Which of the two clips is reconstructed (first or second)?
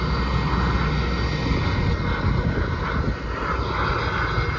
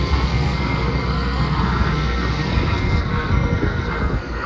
second